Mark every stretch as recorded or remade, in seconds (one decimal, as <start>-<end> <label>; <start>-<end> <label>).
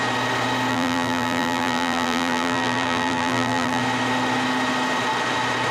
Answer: 0.0-0.7 recorded; 0.7-3.8 remade; 3.8-5.7 recorded